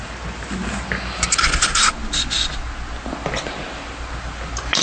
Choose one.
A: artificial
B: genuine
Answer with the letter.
B